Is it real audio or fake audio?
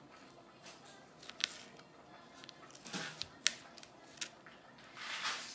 real